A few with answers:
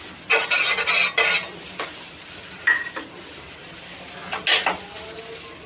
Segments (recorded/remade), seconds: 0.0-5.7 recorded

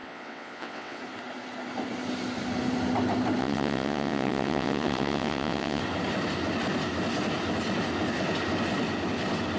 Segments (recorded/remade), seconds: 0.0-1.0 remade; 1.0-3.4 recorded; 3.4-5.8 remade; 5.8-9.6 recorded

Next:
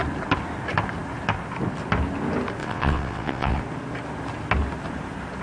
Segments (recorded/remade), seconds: 0.0-2.6 recorded; 2.6-3.6 remade; 3.6-5.4 recorded